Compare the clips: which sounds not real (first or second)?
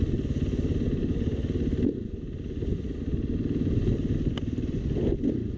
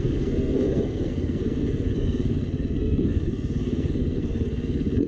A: second